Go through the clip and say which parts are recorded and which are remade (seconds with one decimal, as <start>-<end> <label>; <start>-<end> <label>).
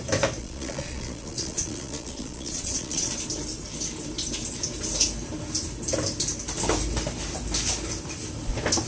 0.0-0.4 recorded; 0.4-3.1 remade; 3.1-8.9 recorded